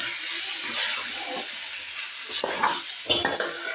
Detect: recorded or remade recorded